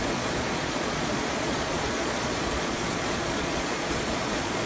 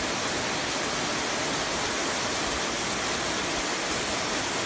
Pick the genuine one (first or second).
second